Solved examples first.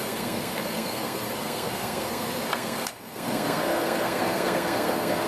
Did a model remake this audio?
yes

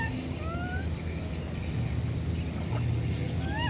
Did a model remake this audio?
no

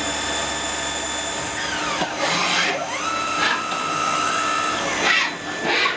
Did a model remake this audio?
no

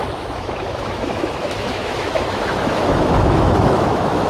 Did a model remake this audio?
yes